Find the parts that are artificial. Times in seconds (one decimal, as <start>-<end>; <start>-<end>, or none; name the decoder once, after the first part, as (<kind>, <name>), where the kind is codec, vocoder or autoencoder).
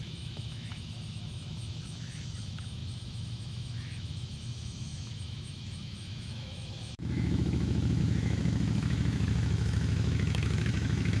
0.0-11.2 (autoencoder, DAC-VAE)